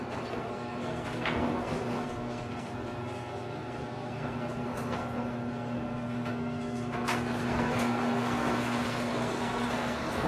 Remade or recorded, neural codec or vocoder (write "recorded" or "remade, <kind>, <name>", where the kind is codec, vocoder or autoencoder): remade, codec, SNAC